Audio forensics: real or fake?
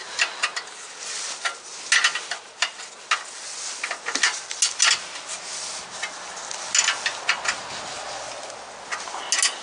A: real